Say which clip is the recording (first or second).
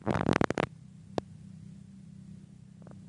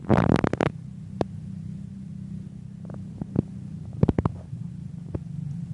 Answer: first